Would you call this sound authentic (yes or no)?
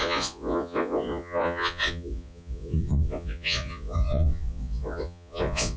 no